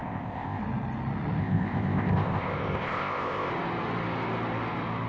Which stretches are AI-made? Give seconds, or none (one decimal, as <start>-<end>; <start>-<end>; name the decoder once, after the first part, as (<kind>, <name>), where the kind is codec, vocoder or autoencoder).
0.0-0.6 (codec, ZipCodec); 1.4-3.5